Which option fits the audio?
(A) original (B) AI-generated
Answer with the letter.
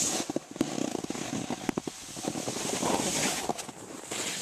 A